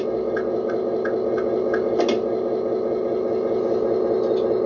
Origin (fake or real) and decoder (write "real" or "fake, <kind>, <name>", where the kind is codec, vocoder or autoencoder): real